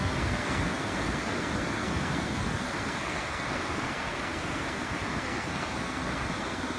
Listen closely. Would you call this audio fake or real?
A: fake